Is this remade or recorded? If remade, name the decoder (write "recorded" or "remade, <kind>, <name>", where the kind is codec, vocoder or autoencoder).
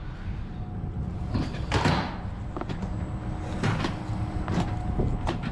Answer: recorded